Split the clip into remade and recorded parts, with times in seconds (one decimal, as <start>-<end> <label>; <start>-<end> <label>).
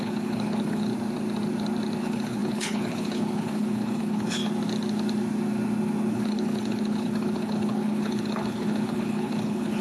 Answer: 0.0-0.9 remade; 0.9-2.0 recorded; 2.0-4.4 remade; 4.4-6.1 recorded; 6.1-9.8 remade